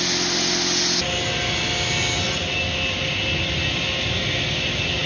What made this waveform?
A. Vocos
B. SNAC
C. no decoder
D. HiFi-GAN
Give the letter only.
C